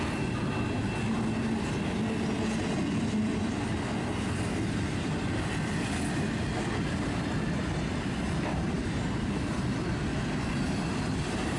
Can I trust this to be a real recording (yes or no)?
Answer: yes